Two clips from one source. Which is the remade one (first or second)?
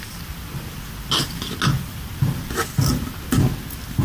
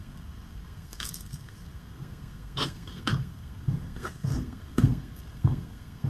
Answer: second